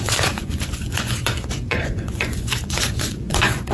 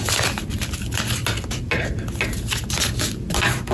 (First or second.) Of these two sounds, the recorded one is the second